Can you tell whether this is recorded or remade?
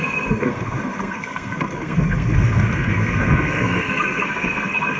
remade